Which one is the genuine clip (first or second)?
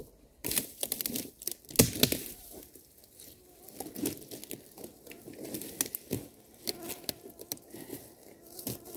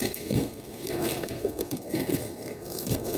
first